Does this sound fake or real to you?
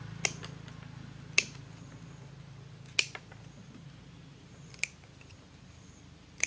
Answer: real